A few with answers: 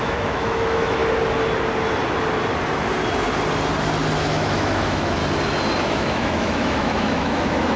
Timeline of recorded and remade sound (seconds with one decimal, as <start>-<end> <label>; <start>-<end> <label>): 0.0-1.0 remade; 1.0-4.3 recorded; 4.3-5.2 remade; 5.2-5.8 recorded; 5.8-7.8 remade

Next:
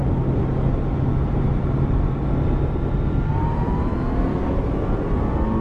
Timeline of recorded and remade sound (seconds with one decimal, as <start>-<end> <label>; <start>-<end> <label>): 0.0-4.3 recorded; 4.3-4.9 remade; 4.9-5.6 recorded

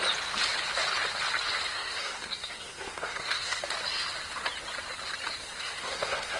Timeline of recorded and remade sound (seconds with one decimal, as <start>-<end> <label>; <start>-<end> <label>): 0.0-1.7 recorded; 1.7-3.6 remade; 3.6-5.4 recorded; 5.4-6.4 remade

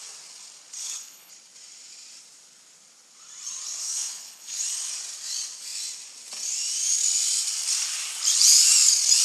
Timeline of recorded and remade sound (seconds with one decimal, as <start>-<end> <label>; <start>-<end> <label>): 0.0-0.8 recorded; 0.8-1.3 remade; 1.3-3.8 recorded; 3.8-4.6 remade; 4.6-9.2 recorded